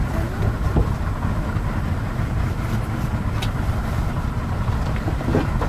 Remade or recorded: recorded